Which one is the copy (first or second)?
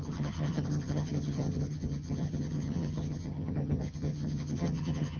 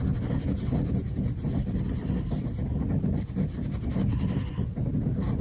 first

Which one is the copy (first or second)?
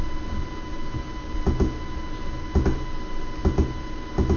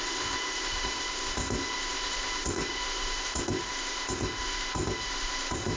second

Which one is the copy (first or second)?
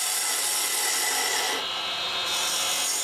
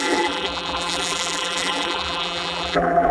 second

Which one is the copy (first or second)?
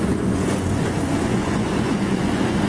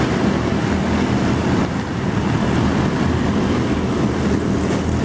first